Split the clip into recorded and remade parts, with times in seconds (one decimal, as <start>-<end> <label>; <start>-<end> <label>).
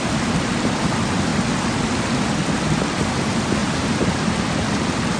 0.0-3.6 recorded; 3.6-4.4 remade; 4.4-5.2 recorded